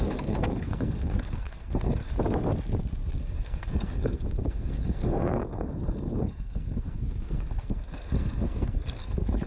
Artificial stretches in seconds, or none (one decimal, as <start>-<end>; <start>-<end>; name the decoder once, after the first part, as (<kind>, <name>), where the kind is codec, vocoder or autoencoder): 0.0-2.1 (codec, SNAC); 3.2-9.5